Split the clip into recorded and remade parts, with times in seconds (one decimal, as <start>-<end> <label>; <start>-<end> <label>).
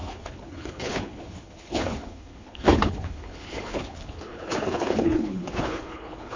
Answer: 0.0-6.4 remade